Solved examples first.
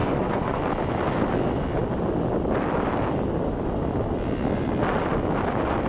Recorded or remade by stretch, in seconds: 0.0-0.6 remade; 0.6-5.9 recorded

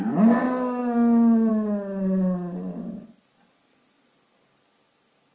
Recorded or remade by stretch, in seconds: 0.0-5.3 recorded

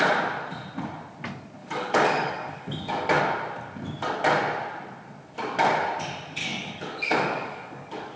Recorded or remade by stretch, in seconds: 0.0-1.6 recorded; 1.6-3.2 remade; 3.2-6.4 recorded; 6.4-8.2 remade

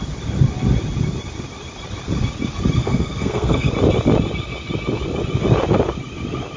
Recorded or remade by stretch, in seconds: 0.0-2.8 recorded; 2.8-3.7 remade; 3.7-6.6 recorded